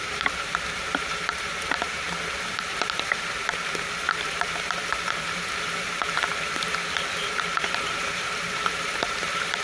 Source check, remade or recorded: remade